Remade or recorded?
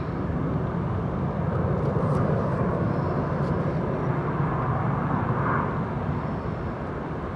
recorded